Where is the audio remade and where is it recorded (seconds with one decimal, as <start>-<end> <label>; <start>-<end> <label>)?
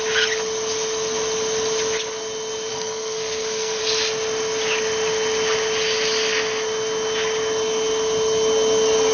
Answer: 0.0-2.7 recorded; 2.7-3.8 remade; 3.8-9.1 recorded